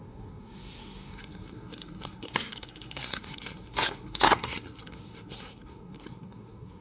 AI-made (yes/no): yes